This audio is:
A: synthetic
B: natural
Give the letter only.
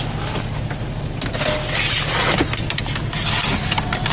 B